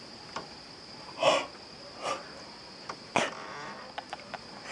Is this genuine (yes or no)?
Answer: yes